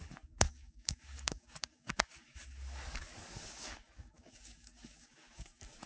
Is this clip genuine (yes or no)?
no